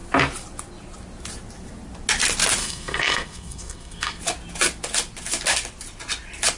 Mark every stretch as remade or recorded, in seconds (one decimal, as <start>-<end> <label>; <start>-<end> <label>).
0.0-2.6 recorded; 2.6-4.2 remade; 4.2-6.6 recorded